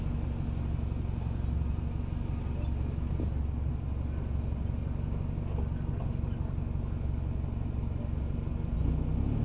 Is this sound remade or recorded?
recorded